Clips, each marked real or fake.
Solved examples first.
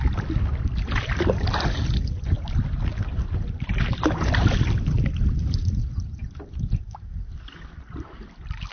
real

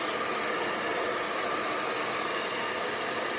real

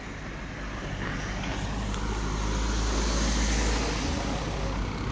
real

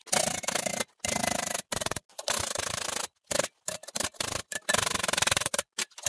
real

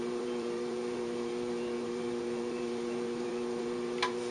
fake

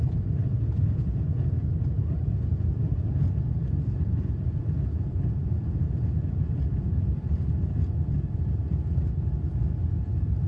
fake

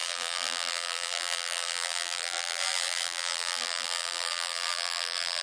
fake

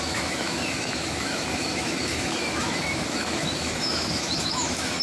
fake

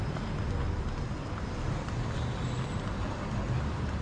real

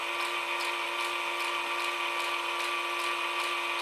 real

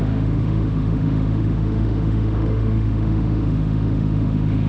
fake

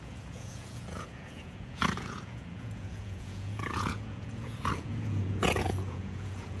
fake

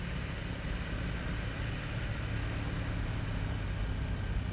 real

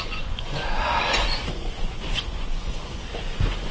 fake